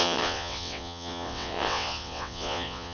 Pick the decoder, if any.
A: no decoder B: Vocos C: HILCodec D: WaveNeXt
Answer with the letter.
D